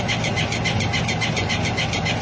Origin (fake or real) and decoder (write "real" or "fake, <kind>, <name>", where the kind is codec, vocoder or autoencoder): real